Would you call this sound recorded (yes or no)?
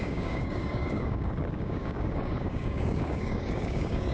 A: no